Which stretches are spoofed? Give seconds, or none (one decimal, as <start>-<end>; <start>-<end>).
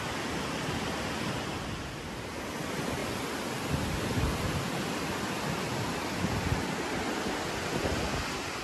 none